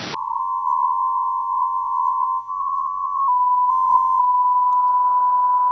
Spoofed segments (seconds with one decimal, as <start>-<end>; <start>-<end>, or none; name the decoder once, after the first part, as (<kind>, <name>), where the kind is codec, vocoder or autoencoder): 0.4-3.2 (vocoder, Vocos); 3.7-4.2